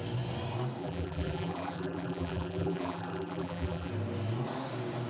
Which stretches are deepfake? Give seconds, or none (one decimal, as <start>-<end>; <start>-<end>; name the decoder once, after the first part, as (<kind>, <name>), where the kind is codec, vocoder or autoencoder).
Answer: 0.8-3.9 (vocoder, BigVGAN v2)